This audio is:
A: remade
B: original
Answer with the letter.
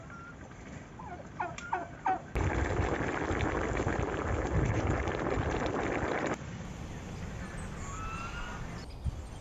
B